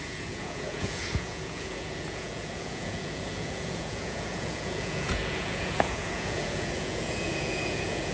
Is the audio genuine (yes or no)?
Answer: no